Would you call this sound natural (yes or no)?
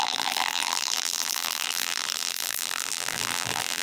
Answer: no